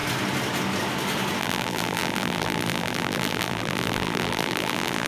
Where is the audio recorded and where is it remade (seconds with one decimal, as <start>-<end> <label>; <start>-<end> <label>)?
0.0-1.4 recorded; 1.4-5.1 remade